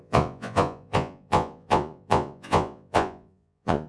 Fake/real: fake